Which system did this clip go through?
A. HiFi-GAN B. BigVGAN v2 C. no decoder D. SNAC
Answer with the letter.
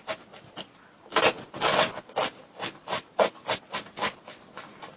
C